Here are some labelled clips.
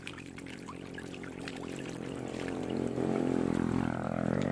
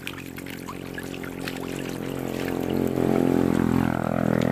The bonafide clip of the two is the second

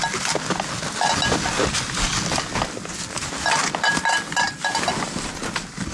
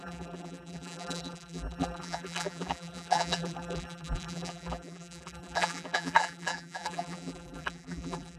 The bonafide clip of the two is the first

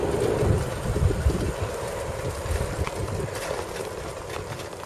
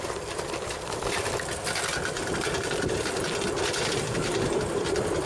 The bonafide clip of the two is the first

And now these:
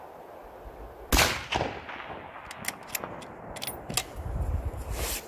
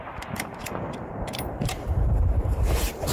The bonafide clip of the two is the first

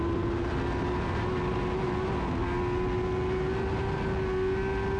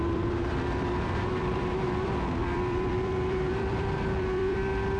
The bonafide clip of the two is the first